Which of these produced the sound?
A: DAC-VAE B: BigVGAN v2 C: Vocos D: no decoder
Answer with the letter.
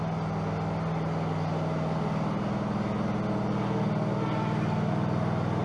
D